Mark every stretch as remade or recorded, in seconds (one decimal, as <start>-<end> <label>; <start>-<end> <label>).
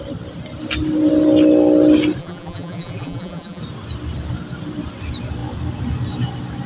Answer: 0.0-2.2 recorded; 2.2-3.6 remade; 3.6-6.7 recorded